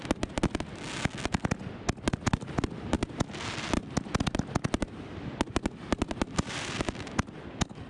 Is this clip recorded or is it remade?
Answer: recorded